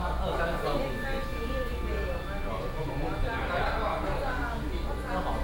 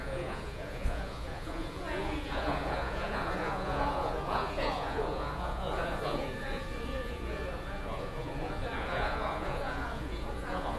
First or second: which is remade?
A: second